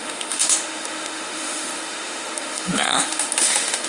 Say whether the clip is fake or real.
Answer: fake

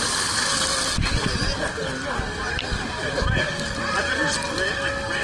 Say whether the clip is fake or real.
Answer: real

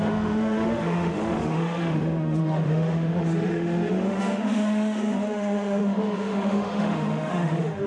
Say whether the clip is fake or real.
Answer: fake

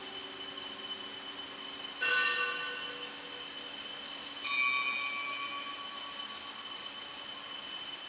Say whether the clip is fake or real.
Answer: real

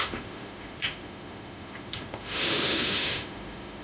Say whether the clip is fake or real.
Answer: fake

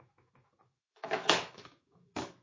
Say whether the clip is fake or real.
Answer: fake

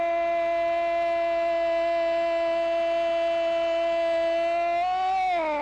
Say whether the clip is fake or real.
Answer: real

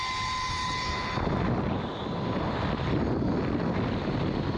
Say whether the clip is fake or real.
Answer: real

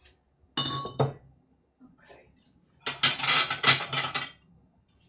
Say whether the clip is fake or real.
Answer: real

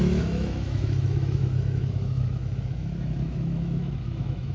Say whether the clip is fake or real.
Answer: fake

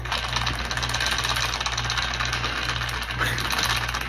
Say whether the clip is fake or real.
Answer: real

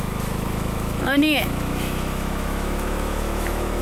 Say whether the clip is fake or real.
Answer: fake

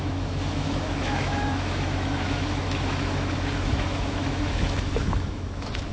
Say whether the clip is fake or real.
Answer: fake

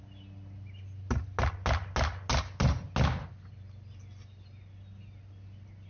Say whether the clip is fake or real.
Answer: real